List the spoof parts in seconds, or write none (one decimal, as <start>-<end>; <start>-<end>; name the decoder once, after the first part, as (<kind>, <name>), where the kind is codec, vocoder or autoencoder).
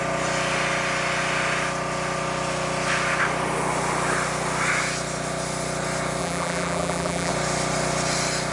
6.2-7.3 (vocoder, BigVGAN v2)